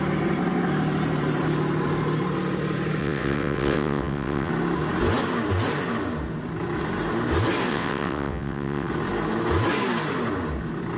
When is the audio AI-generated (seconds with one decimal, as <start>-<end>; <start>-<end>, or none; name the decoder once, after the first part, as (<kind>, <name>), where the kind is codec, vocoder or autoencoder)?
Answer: 3.0-4.5 (vocoder, WaveNeXt); 7.7-8.9